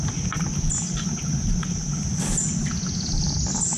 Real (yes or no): yes